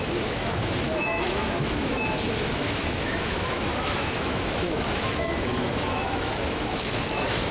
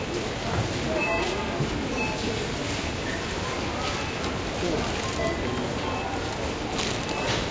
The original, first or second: second